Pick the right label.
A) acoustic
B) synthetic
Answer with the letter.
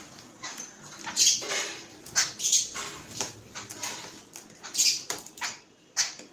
B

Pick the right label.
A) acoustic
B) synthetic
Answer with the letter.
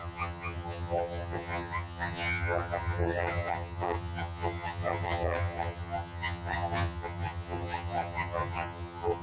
B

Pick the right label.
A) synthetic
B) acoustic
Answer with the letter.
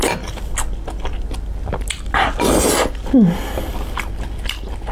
B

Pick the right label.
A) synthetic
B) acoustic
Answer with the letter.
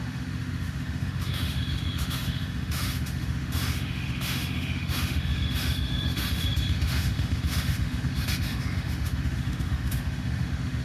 A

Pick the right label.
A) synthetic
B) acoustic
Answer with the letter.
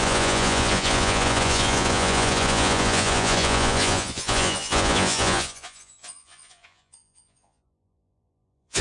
A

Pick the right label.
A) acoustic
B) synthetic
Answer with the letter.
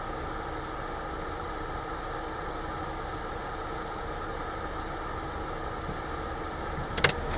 A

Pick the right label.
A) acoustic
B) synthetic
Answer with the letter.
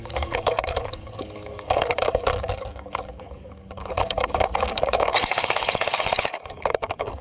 B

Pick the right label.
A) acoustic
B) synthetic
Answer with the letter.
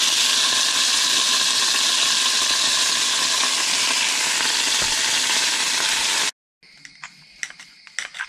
A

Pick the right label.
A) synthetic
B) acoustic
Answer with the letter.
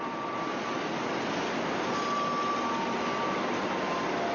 B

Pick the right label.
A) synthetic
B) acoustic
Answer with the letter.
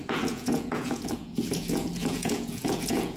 A